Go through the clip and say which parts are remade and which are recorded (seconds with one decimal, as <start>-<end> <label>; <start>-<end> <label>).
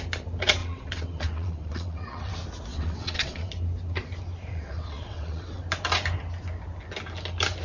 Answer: 0.0-0.6 recorded; 0.6-2.3 remade; 2.3-2.7 recorded; 2.7-3.5 remade; 3.5-4.5 recorded; 4.5-5.6 remade; 5.6-7.6 recorded